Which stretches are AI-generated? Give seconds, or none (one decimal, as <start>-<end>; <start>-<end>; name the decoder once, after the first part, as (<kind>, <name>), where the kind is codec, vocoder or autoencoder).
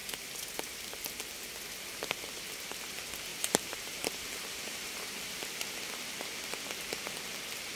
3.3-5.8 (vocoder, BigVGAN v2)